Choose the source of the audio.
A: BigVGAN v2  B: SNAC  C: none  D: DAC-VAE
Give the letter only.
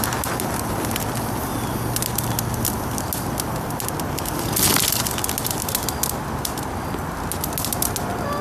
C